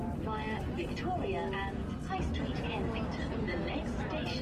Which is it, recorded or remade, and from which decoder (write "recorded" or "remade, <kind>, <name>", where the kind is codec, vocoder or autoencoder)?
recorded